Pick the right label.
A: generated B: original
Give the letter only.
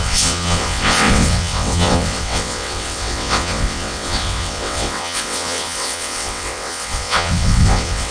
A